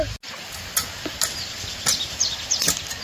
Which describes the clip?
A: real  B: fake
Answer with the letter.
A